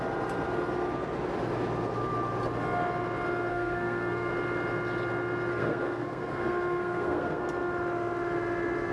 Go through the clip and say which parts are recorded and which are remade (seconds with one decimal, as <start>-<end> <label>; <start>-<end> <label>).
0.0-3.5 recorded; 3.5-4.3 remade; 4.3-5.5 recorded; 5.5-7.4 remade; 7.4-8.9 recorded